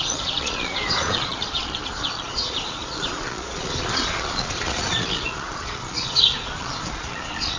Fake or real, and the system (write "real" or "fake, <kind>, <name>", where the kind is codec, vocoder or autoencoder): fake, vocoder, Vocos